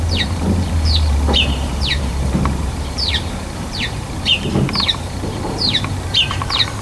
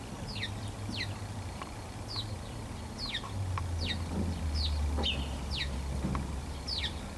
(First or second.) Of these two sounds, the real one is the second